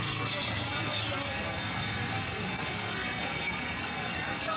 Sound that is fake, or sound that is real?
fake